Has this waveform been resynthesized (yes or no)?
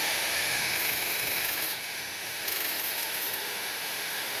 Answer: yes